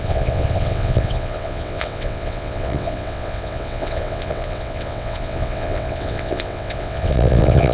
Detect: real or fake fake